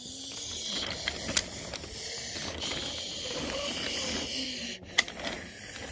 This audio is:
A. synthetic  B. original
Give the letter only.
B